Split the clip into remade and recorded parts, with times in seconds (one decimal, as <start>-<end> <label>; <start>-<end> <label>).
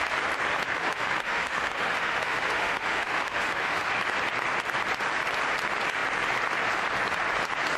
0.0-0.7 recorded; 0.7-3.9 remade; 3.9-7.8 recorded